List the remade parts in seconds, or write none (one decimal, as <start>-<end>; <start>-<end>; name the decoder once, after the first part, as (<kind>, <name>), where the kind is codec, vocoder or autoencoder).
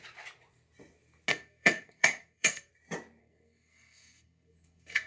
1.3-2.7 (codec, SNAC); 3.2-5.1